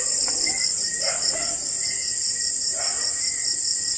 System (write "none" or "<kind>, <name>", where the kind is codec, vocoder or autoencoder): none